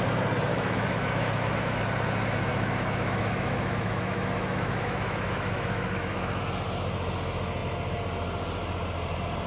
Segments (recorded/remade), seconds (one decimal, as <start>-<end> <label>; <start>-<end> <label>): 0.0-0.5 recorded; 0.5-1.8 remade; 1.8-2.5 recorded; 2.5-6.4 remade; 6.4-9.5 recorded